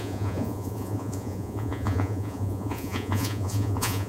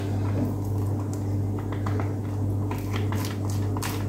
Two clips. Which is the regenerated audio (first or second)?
first